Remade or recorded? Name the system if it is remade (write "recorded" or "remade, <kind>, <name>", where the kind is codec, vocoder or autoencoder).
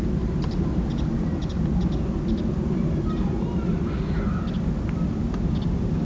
recorded